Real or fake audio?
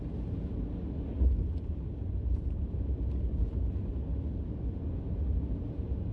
real